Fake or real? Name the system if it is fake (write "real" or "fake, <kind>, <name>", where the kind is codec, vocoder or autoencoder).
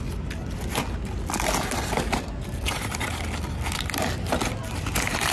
real